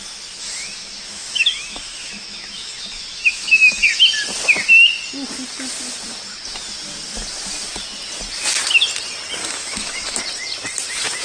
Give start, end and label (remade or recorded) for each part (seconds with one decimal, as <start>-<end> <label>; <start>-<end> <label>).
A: 0.0-0.4 recorded; 0.4-3.9 remade; 3.9-9.4 recorded; 9.4-10.2 remade; 10.2-11.2 recorded